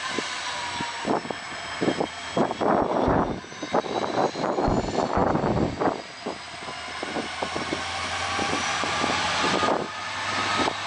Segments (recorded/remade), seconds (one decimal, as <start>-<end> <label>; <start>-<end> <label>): 0.0-2.9 recorded; 2.9-4.2 remade; 4.2-10.9 recorded